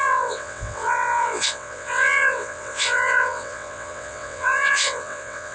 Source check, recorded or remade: remade